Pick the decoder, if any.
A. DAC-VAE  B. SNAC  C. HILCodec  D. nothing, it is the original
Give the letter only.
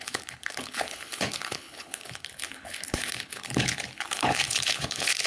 C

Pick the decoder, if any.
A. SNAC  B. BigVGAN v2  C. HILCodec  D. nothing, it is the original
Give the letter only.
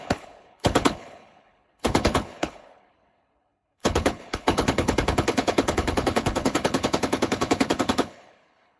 C